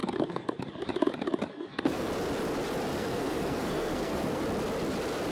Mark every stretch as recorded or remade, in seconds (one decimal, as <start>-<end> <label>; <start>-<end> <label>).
0.0-0.6 remade; 0.6-1.5 recorded; 1.5-2.1 remade; 2.1-2.9 recorded; 2.9-4.4 remade; 4.4-5.3 recorded